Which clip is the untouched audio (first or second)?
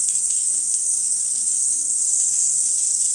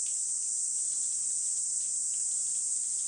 second